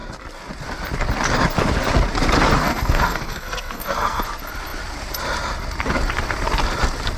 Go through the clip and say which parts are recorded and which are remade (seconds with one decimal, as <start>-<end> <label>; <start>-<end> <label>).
0.0-2.6 recorded; 2.6-4.2 remade; 4.2-7.2 recorded